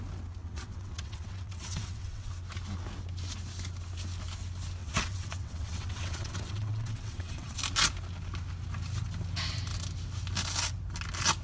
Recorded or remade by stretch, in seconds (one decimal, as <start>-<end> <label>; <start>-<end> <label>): 0.0-0.4 recorded; 0.4-2.3 remade; 2.3-4.8 recorded; 4.8-7.6 remade; 7.6-11.4 recorded